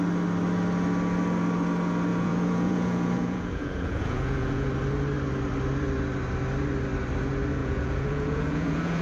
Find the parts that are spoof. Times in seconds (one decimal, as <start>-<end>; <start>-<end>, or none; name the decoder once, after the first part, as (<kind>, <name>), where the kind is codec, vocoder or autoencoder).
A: 2.1-4.7 (vocoder, Vocos); 7.6-9.0